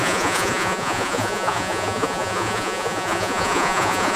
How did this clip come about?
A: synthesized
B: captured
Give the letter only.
A